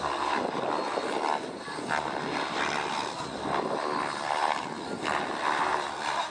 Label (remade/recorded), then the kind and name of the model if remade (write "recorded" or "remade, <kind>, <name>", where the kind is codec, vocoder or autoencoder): recorded